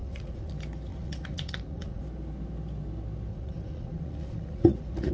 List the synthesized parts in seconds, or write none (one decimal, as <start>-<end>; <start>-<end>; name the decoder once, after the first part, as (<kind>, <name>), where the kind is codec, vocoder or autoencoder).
0.0-0.5 (vocoder, Vocos); 0.9-2.0; 3.3-5.1